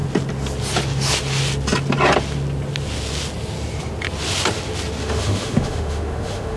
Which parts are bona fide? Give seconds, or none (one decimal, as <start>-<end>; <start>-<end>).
0.0-5.0